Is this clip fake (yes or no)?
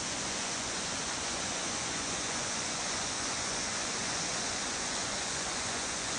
yes